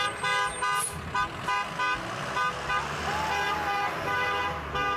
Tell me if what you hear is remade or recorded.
recorded